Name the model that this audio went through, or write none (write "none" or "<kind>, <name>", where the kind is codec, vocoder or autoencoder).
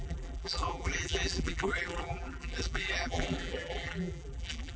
vocoder, BigVGAN v2